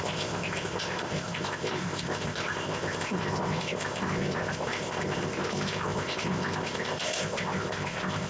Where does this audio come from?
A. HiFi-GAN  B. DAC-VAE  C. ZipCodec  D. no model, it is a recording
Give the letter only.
C